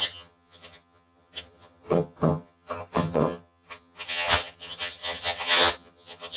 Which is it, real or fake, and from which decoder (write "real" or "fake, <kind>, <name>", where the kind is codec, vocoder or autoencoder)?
fake, vocoder, HiFi-GAN